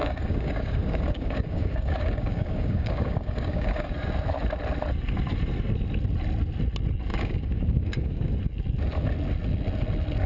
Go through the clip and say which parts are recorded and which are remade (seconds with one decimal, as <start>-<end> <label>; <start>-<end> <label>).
0.0-3.9 remade; 3.9-7.1 recorded; 7.1-8.3 remade; 8.3-10.3 recorded